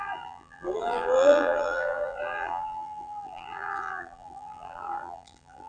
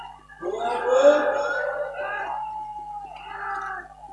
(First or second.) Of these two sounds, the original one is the second